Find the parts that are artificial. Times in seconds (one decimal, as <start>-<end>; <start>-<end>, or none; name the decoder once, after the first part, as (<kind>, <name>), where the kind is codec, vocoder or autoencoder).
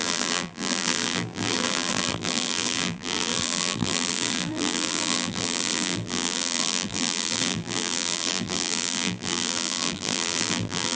0.0-10.9 (vocoder, BigVGAN v2)